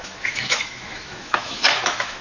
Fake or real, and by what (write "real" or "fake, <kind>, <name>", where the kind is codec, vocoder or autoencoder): fake, autoencoder, DAC-VAE